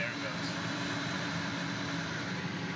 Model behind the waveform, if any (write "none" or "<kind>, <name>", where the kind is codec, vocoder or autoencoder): vocoder, BigVGAN v2